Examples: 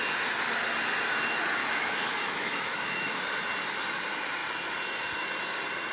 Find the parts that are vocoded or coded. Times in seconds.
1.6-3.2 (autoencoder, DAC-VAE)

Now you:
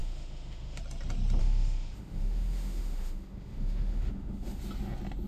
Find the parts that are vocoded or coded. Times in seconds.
0.0-0.8 (autoencoder, DAC-VAE); 1.4-4.6

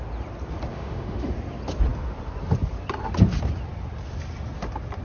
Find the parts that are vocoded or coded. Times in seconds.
0.7-1.3 (autoencoder, DAC-VAE)

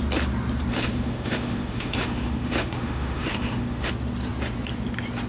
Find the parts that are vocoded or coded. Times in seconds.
0.7-3.9 (autoencoder, DAC-VAE)

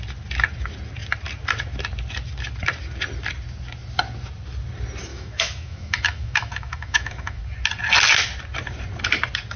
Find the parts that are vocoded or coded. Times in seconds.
5.1-7.4 (autoencoder, DAC-VAE)

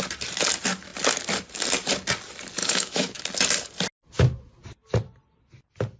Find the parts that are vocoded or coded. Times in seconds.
2.6-3.2 (autoencoder, DAC-VAE)

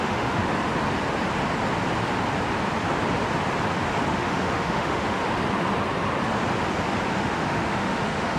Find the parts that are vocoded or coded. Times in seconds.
0.0-0.4 (autoencoder, DAC-VAE); 4.1-5.2; 7.2-8.4